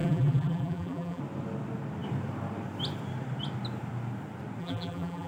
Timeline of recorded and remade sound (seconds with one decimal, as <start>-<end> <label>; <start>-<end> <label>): 0.0-1.2 remade; 1.2-4.6 recorded; 4.6-5.3 remade